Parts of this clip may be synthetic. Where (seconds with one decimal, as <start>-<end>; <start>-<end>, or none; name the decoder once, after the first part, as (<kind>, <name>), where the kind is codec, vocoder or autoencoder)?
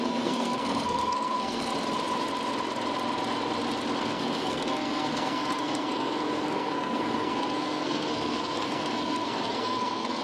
0.0-1.7 (codec, SNAC); 4.0-10.2